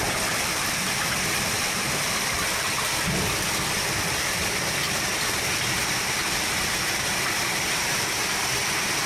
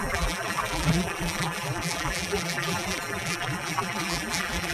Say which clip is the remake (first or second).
second